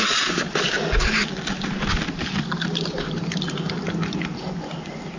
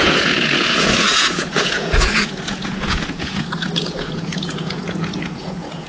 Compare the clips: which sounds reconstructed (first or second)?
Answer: second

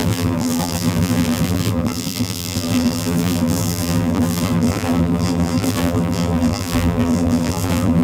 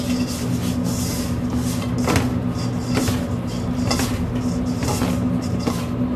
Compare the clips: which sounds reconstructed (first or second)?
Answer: first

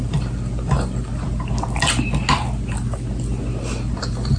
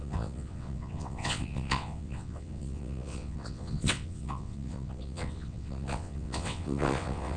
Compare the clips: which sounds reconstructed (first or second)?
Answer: second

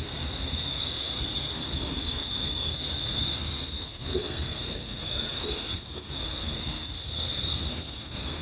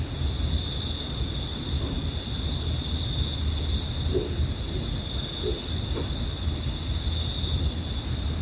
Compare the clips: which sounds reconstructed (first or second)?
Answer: first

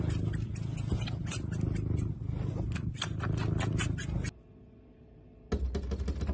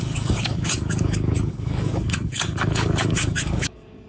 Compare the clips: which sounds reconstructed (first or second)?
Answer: second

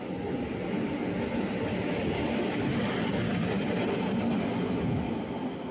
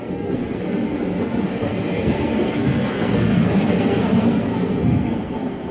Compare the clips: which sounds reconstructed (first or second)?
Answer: second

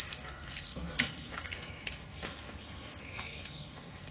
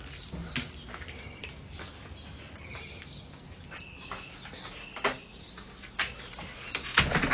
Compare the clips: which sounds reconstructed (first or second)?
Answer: first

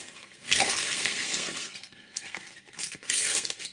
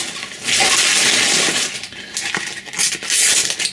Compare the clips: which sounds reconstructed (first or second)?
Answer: first